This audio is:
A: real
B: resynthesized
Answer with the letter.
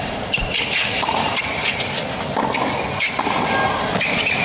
A